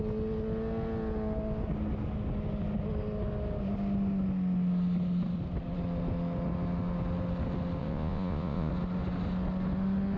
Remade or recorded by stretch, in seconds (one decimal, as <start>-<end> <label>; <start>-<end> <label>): 0.0-7.8 recorded; 7.8-8.7 remade; 8.7-10.2 recorded